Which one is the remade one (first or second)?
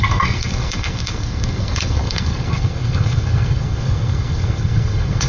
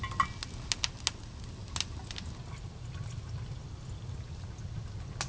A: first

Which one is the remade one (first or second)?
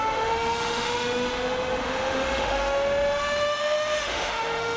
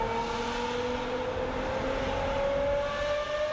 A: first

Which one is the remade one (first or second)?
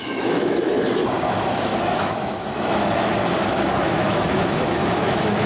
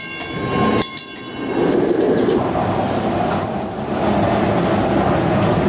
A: first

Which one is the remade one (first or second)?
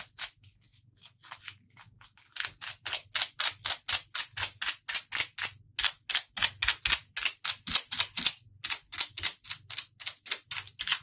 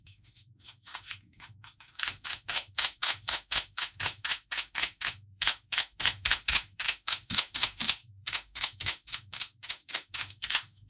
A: second